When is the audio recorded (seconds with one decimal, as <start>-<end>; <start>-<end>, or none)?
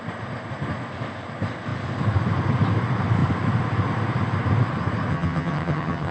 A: 0.0-5.1